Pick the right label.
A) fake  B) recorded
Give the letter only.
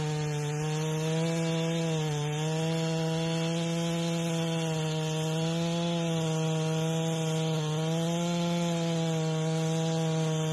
B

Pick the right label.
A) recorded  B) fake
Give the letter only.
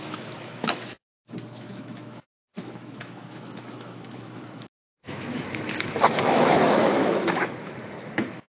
B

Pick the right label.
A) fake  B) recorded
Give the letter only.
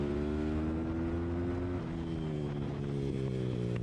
B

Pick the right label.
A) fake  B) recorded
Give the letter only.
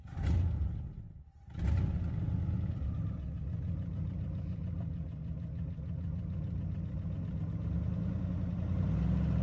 B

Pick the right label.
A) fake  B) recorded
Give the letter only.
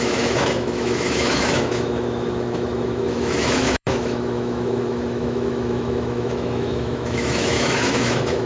A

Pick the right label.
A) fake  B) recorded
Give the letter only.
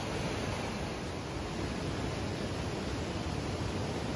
B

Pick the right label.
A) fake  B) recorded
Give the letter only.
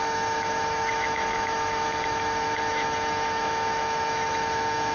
A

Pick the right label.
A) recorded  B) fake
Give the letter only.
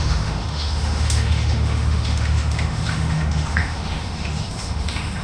B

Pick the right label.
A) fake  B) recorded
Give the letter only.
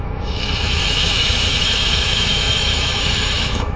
A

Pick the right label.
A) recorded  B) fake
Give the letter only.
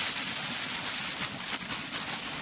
A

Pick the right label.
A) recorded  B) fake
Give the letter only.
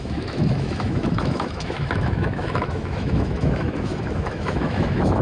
B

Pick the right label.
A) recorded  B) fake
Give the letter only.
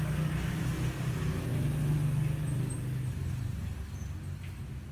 A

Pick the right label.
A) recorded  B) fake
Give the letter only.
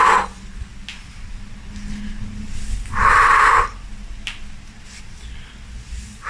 A